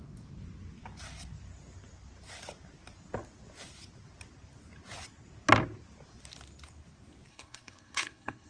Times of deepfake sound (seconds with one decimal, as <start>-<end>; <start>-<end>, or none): 7.3-8.5